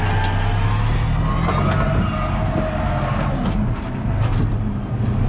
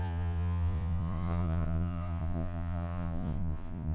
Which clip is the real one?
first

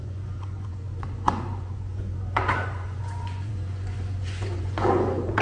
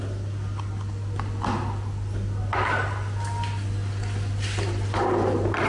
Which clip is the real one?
second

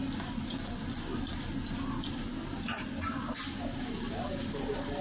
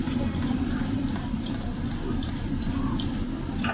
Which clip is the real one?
first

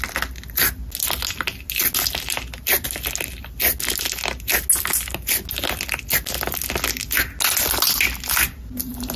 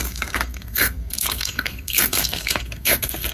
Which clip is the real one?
first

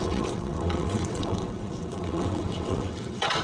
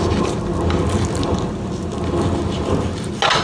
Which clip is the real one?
second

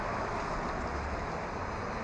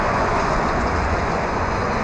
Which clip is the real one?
first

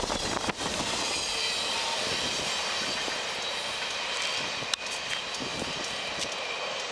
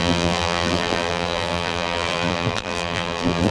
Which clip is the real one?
first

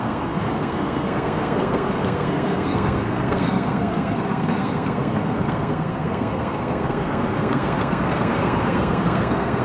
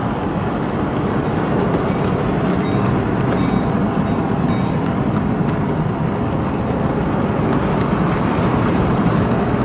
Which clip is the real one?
second